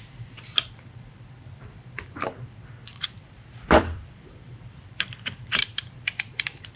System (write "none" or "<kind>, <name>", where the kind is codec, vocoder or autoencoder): vocoder, BigVGAN v2